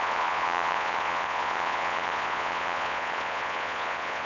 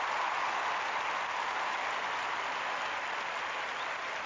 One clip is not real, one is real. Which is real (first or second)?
second